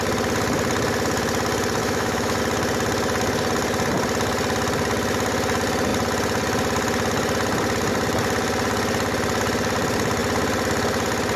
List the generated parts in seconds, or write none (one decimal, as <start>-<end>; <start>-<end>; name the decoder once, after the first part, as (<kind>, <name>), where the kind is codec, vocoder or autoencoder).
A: 1.8-2.4 (autoencoder, DAC-VAE)